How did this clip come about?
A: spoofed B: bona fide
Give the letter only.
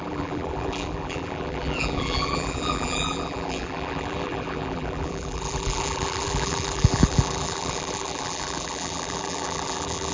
A